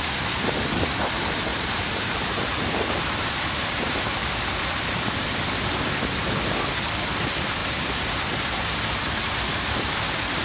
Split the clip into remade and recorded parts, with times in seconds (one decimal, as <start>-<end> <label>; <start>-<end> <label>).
0.0-1.5 recorded; 1.5-5.8 remade; 5.8-7.6 recorded; 7.6-9.2 remade; 9.2-10.4 recorded